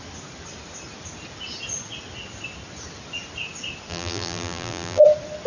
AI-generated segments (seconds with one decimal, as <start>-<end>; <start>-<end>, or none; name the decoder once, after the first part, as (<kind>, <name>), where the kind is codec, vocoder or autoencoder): 3.9-5.0 (vocoder, BigVGAN v2)